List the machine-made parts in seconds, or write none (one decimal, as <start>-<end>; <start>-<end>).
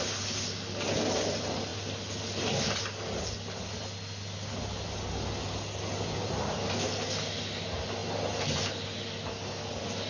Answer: none